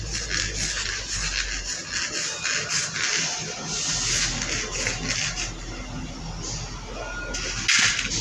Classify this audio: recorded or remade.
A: recorded